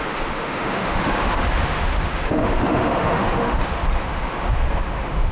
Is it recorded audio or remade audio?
remade